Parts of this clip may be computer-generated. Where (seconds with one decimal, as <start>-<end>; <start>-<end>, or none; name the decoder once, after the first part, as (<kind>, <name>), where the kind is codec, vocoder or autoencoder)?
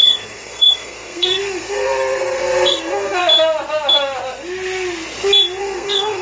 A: 0.0-3.2 (codec, SNAC); 5.6-6.2